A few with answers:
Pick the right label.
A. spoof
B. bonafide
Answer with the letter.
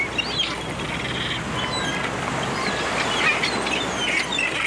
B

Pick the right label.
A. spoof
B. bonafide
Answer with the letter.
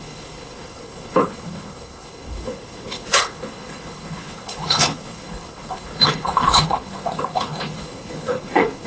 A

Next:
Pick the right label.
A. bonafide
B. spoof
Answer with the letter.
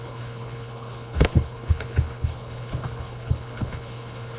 B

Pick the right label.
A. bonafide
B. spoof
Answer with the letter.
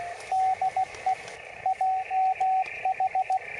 A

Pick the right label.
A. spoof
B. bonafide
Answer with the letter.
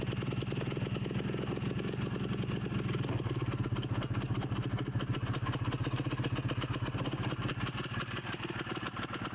B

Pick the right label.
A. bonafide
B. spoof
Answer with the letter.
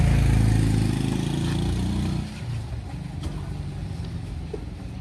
A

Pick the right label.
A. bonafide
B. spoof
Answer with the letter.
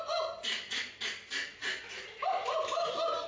A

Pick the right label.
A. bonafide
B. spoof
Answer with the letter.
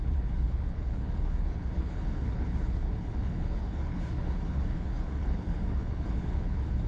B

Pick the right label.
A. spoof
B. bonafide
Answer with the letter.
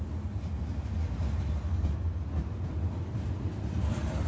B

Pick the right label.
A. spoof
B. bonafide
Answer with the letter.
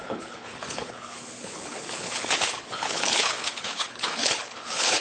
A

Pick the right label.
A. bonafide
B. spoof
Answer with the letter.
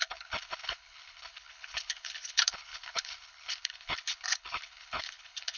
B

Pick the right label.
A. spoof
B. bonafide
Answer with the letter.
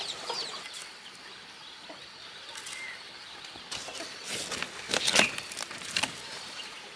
B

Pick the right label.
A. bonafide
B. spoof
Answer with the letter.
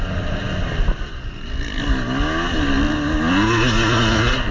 A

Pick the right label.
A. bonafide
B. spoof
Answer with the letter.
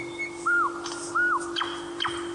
A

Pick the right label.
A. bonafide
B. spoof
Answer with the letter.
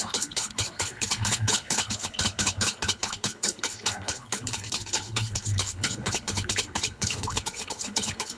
B